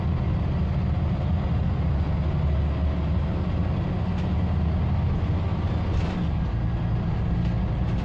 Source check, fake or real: real